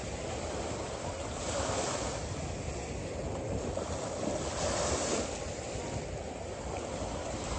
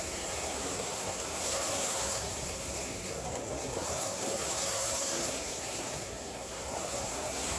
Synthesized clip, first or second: second